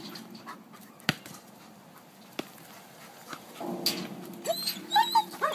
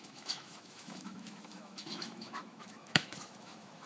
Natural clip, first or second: first